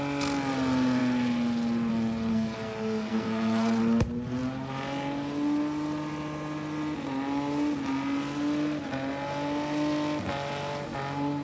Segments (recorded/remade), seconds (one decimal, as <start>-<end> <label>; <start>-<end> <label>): 0.0-2.3 recorded; 2.3-3.8 remade; 3.8-11.4 recorded